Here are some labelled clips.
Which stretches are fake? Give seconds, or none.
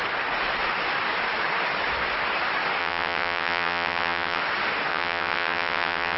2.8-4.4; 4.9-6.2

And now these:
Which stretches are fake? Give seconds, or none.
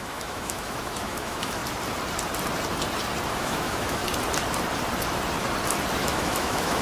0.0-1.6; 3.3-4.0; 6.0-6.8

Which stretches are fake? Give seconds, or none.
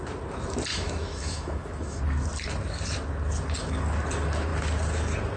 0.7-2.0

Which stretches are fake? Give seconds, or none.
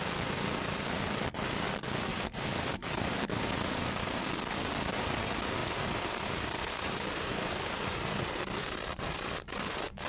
2.1-4.2; 5.6-10.1